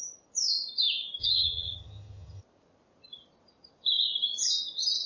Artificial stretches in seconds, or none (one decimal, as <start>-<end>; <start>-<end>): 1.2-2.4